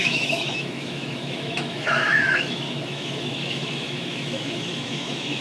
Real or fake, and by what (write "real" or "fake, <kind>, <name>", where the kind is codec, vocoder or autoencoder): fake, autoencoder, DAC-VAE